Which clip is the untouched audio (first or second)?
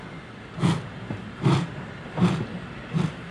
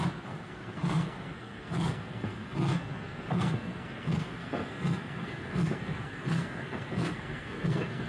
first